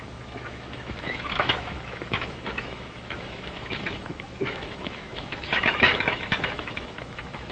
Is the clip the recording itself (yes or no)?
no